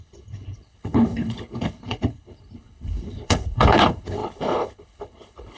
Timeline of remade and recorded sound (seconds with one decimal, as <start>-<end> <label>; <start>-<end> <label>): 0.0-5.6 remade